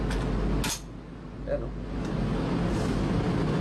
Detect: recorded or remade recorded